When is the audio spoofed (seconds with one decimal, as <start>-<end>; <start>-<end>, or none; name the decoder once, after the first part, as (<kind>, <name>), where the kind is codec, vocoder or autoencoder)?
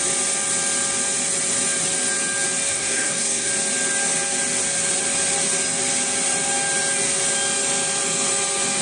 2.7-3.5 (codec, SNAC)